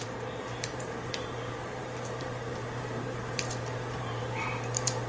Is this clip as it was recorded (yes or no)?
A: no